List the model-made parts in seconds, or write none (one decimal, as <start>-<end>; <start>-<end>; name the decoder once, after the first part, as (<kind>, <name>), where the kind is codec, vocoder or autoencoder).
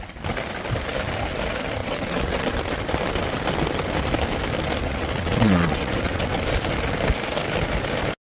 1.8-2.5 (vocoder, WaveNeXt); 4.8-6.4